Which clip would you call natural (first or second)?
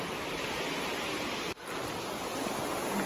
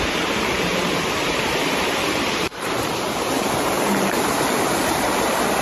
first